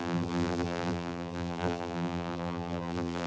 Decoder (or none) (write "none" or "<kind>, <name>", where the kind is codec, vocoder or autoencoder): vocoder, BigVGAN v2